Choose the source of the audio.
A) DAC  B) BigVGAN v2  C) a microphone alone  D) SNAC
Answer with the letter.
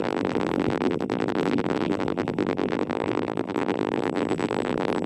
B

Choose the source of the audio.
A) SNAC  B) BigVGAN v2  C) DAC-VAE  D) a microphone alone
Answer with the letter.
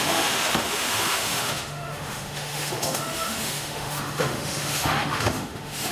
C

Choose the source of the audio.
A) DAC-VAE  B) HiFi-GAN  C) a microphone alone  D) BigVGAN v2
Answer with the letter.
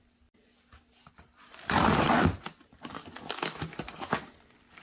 D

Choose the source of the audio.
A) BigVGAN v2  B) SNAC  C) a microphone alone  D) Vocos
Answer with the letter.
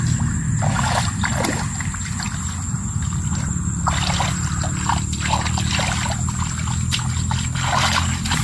C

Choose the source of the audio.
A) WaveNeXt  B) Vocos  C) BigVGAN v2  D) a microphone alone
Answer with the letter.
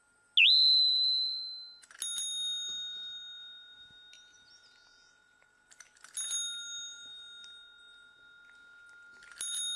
D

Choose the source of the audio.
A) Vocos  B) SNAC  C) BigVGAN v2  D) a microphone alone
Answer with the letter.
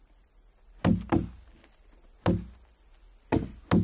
D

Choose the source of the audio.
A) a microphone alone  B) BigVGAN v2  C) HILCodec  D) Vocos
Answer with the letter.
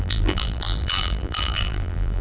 B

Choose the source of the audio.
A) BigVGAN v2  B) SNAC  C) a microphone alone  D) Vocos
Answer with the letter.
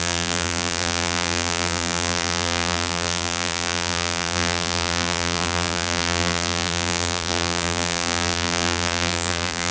A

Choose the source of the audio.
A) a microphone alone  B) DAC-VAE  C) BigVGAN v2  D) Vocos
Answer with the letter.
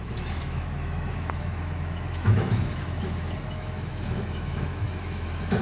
B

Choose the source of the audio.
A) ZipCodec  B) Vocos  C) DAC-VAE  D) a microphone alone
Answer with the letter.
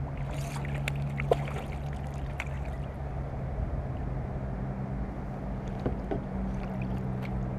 D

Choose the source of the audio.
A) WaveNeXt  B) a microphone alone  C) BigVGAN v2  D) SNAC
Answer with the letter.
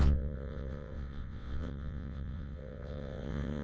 A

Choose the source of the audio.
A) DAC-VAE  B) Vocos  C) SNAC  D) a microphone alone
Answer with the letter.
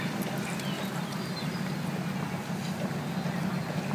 D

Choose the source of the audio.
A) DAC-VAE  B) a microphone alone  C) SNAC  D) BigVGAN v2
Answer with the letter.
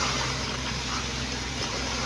D